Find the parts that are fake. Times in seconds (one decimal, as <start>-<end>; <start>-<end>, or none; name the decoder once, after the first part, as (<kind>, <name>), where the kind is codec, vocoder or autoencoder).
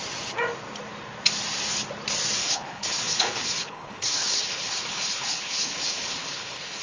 2.4-6.8 (codec, HILCodec)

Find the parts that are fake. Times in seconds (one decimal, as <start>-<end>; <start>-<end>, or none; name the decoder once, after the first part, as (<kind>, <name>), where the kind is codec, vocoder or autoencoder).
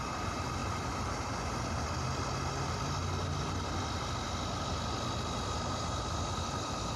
none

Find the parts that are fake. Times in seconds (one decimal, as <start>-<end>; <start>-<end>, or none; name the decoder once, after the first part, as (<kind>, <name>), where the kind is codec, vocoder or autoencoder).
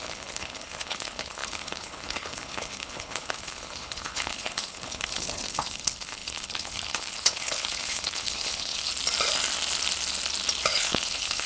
0.0-8.9 (codec, HILCodec); 10.7-11.5